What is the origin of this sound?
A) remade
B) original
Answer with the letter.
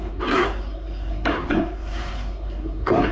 A